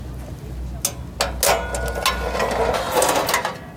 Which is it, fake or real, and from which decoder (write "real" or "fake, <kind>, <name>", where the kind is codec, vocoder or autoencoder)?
real